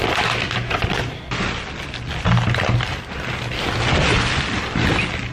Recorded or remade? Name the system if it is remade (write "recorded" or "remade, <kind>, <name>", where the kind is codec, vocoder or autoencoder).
recorded